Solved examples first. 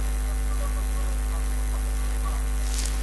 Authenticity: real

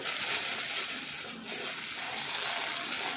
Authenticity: real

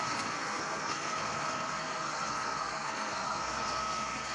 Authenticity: fake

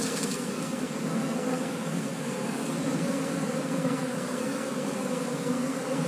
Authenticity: fake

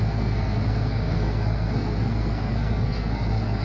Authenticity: fake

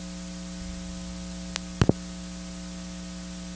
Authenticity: real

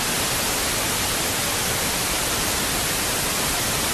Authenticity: real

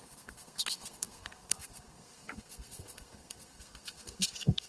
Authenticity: fake